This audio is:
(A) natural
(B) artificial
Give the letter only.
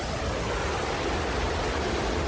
A